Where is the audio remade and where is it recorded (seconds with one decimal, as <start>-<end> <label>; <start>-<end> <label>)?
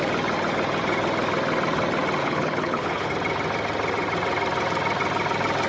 0.0-2.2 recorded; 2.2-3.1 remade; 3.1-5.7 recorded